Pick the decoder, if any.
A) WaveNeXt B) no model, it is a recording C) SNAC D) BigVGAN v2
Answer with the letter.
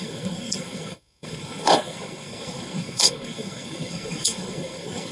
C